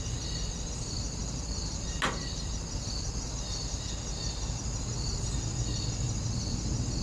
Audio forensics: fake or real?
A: real